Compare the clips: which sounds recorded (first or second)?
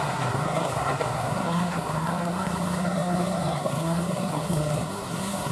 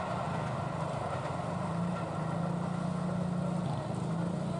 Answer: second